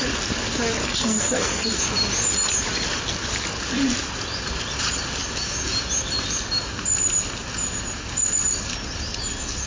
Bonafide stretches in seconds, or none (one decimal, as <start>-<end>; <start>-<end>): 0.0-0.8; 1.8-9.7